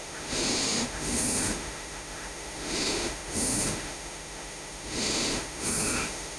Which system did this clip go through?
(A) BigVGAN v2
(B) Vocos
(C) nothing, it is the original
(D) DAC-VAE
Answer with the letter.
D